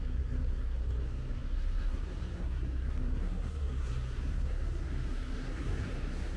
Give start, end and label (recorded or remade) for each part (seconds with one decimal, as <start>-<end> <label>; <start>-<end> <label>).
0.0-6.4 remade